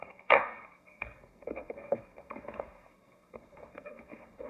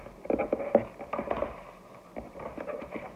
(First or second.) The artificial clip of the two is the first